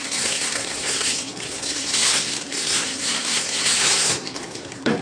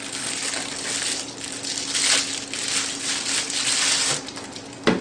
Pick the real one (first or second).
second